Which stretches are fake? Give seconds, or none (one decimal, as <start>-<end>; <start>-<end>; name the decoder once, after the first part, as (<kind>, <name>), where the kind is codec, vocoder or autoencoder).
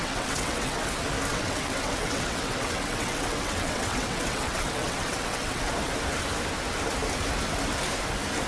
0.0-0.8 (vocoder, WaveNeXt); 1.3-5.7